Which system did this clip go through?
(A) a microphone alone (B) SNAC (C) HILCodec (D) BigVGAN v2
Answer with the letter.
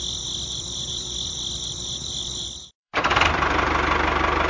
D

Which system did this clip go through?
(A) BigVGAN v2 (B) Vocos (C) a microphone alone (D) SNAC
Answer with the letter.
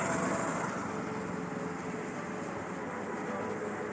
C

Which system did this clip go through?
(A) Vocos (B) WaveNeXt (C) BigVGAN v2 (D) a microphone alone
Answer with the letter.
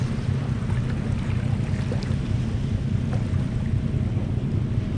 D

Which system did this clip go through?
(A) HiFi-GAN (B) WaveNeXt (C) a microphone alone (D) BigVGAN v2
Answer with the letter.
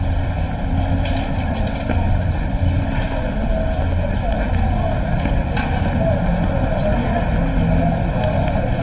C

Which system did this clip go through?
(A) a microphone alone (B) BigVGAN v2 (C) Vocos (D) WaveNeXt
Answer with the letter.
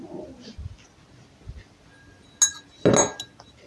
A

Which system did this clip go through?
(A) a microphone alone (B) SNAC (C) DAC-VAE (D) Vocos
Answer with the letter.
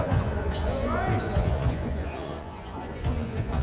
D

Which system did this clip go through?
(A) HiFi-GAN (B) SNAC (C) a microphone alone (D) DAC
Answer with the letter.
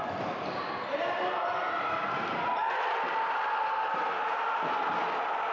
C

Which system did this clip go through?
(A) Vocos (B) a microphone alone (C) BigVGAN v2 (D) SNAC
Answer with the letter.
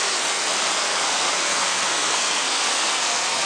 D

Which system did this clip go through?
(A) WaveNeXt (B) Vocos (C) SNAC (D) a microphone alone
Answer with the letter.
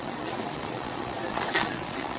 B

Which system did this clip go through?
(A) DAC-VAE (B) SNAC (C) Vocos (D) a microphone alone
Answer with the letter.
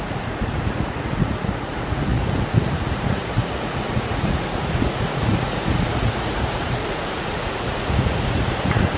C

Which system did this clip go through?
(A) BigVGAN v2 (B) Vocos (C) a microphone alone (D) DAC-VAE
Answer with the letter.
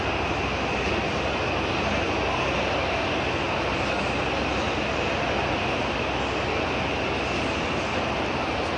C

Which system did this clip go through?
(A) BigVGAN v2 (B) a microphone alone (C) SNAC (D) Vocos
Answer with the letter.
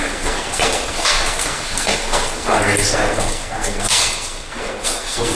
C